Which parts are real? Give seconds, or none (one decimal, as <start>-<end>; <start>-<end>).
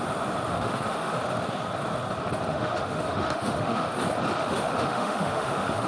0.0-0.5; 1.2-2.5; 3.9-4.4